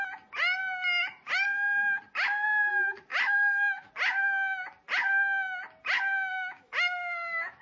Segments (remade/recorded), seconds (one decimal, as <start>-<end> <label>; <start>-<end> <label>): 0.0-3.1 recorded; 3.1-3.9 remade; 3.9-6.3 recorded; 6.3-7.6 remade

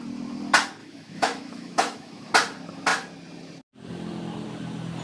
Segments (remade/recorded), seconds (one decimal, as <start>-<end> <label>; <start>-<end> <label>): 0.0-0.8 recorded; 0.8-2.3 remade; 2.3-5.0 recorded

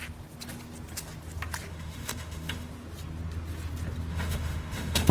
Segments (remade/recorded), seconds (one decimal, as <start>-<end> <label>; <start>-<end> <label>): 0.0-1.7 recorded; 1.7-2.7 remade; 2.7-4.1 recorded; 4.1-5.1 remade

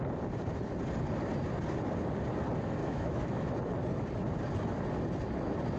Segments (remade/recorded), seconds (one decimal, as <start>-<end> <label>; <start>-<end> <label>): 0.0-2.8 recorded; 2.8-3.5 remade; 3.5-5.8 recorded

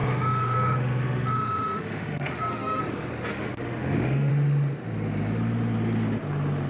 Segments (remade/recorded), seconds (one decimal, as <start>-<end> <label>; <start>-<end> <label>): 0.0-2.8 remade; 2.8-3.3 recorded; 3.3-4.3 remade; 4.3-6.7 recorded

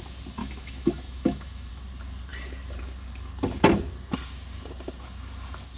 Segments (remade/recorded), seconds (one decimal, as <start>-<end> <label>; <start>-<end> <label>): 0.0-0.4 recorded; 0.4-1.7 remade; 1.7-5.8 recorded

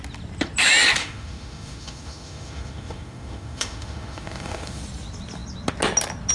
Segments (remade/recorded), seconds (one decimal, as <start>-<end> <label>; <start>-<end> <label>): 0.0-1.0 recorded; 1.0-4.8 remade; 4.8-6.3 recorded

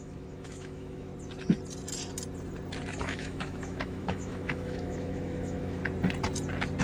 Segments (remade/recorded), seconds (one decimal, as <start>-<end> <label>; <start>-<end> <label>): 0.0-1.1 remade; 1.1-3.0 recorded; 3.0-5.8 remade; 5.8-6.8 recorded